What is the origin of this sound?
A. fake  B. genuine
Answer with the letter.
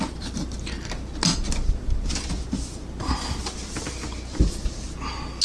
B